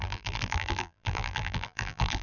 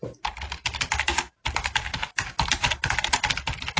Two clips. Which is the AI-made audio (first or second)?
first